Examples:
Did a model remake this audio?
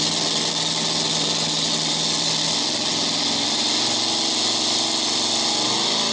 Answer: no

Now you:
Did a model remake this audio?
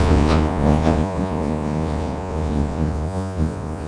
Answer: yes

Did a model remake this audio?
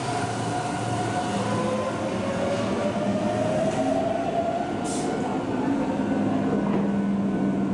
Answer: no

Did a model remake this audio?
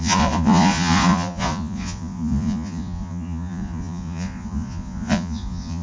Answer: yes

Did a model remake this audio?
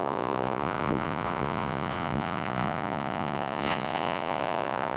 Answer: yes